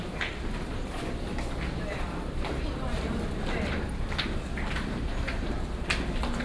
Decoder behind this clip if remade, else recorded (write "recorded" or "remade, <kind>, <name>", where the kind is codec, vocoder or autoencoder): recorded